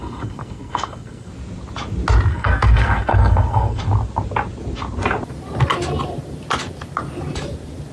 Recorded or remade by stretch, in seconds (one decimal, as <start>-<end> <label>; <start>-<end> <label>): 0.0-1.3 remade; 1.3-2.3 recorded; 2.3-3.8 remade; 3.8-7.9 recorded